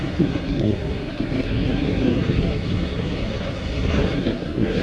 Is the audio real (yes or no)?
no